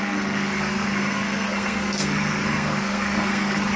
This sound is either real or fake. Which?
fake